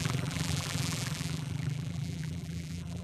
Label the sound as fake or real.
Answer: fake